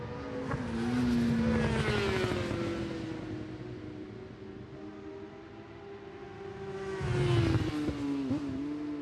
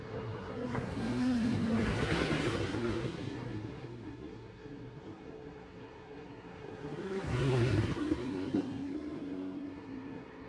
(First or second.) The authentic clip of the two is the first